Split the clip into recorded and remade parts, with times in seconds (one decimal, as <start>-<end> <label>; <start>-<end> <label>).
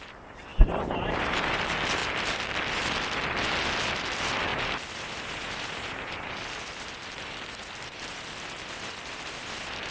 0.0-0.5 recorded; 0.5-1.6 remade; 1.6-4.5 recorded; 4.5-8.2 remade; 8.2-9.9 recorded